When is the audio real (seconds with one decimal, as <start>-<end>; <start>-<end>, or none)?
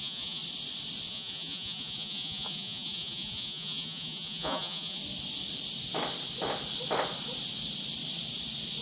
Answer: 0.4-1.1; 5.0-8.8